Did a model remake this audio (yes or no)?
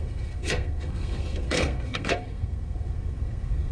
yes